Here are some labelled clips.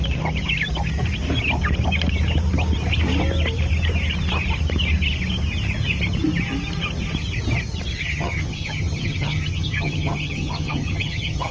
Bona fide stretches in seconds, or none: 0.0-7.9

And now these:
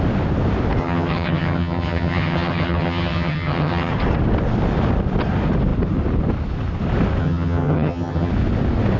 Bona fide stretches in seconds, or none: 0.0-0.8; 3.9-7.2; 8.3-9.0

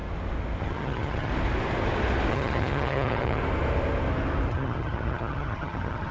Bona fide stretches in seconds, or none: 0.0-0.6; 1.3-2.3; 3.4-4.5

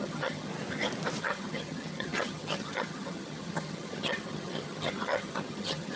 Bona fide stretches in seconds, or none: 0.5-1.2

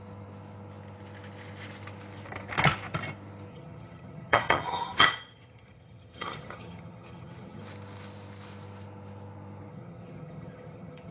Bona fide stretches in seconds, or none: 0.0-3.5; 7.6-9.7

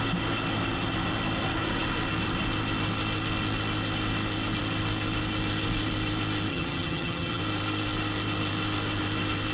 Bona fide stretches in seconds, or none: 0.0-6.5; 7.4-9.5